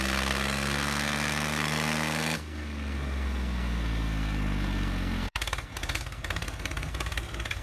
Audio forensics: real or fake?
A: fake